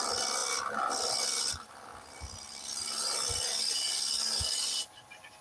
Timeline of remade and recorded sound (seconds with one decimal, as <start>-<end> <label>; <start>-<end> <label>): 0.0-5.4 recorded